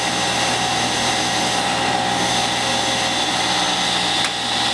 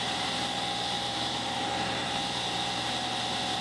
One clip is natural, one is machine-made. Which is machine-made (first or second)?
second